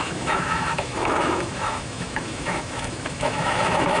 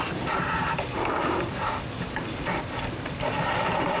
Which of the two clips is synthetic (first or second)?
first